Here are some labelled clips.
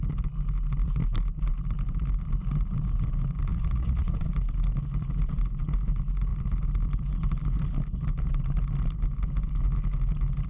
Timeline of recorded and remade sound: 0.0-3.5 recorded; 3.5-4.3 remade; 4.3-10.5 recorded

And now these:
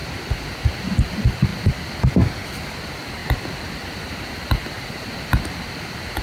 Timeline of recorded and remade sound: 0.0-1.1 recorded; 1.1-6.2 remade

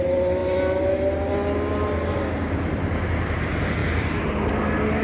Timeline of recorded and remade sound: 0.0-3.8 recorded; 3.8-4.5 remade; 4.5-5.0 recorded

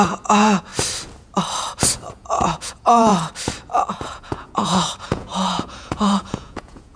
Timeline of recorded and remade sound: 0.0-0.7 remade; 0.7-2.1 recorded; 2.1-3.1 remade; 3.1-3.9 recorded; 3.9-7.0 remade

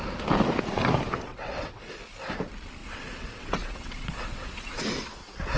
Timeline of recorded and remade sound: 0.0-1.3 recorded; 1.3-1.9 remade; 1.9-2.8 recorded; 2.8-5.6 remade

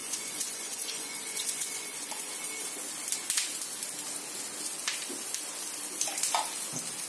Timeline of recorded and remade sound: 0.0-2.3 remade; 2.3-7.1 recorded

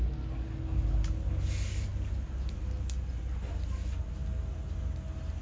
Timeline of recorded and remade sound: 0.0-5.4 recorded

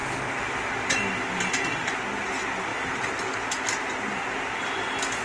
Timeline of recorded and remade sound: 0.0-5.2 recorded